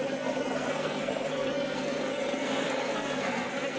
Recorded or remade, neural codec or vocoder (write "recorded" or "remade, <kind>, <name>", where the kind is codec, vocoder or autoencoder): remade, codec, SNAC